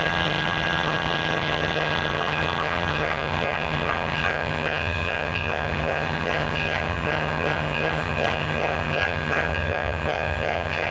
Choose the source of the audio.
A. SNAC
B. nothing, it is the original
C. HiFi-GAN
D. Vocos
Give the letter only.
C